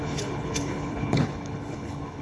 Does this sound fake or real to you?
fake